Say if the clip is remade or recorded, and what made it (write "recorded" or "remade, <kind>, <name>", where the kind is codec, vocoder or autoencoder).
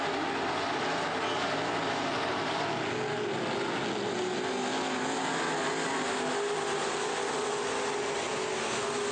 recorded